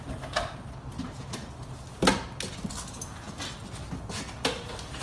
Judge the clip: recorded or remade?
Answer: recorded